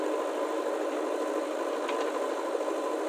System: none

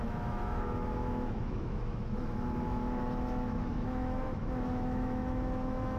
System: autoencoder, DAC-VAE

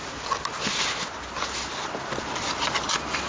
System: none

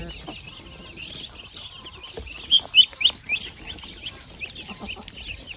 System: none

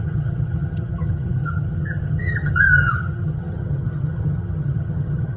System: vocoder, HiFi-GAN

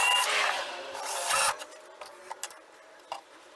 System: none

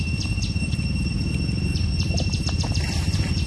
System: none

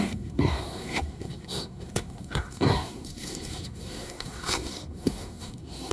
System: codec, SNAC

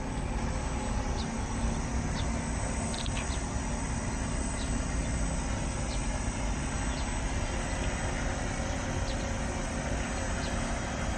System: none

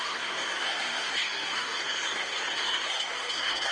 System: codec, SNAC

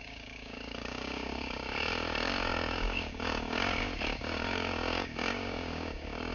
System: codec, DAC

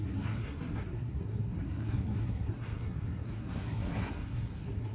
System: codec, SNAC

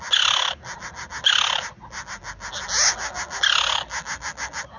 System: none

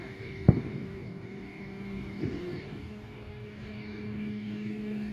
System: codec, DAC